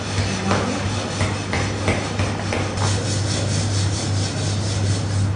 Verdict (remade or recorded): recorded